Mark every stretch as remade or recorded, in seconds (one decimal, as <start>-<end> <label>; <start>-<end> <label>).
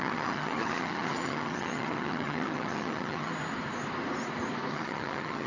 0.0-3.3 remade; 3.3-4.7 recorded; 4.7-5.5 remade